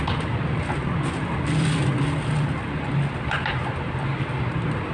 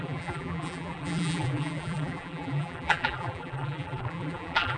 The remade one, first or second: second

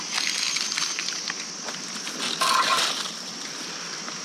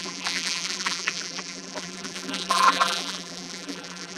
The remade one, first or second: second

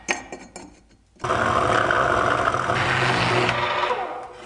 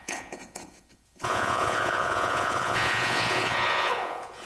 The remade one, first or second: second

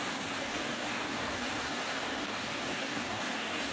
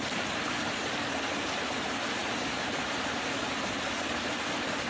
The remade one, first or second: first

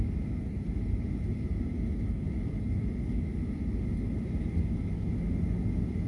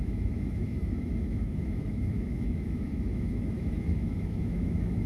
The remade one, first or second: second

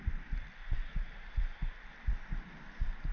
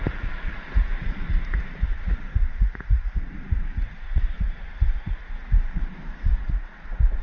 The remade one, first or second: second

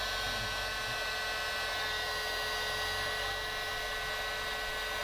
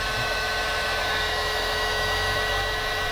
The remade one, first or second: second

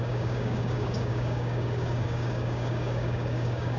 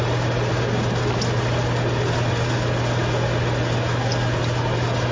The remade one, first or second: first